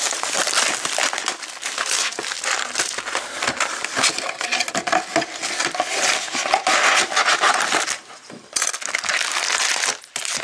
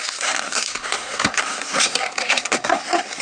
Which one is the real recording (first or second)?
first